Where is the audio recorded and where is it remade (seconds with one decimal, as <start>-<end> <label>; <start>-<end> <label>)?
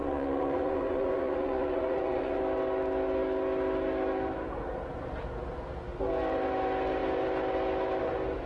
0.0-2.4 remade; 2.4-8.5 recorded